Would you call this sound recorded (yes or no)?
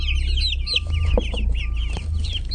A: yes